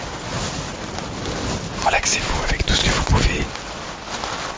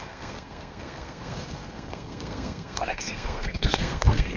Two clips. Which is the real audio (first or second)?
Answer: first